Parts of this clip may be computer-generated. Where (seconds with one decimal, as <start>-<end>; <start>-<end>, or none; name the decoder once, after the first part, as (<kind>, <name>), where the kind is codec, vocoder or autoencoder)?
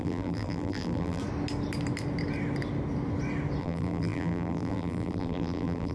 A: 0.0-1.2 (vocoder, BigVGAN v2); 3.6-5.9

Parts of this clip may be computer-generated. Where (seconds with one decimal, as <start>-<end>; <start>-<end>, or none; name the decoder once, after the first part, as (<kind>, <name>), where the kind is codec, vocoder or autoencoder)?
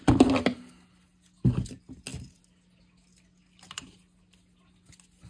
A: none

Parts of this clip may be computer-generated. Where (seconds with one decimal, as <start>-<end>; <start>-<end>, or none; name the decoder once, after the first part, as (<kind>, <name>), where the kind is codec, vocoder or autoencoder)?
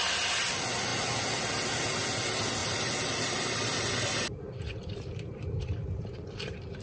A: 0.9-1.5 (vocoder, BigVGAN v2); 2.6-6.8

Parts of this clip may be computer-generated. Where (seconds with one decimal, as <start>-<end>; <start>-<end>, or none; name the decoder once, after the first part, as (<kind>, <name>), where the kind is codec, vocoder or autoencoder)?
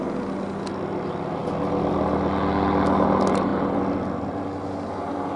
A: none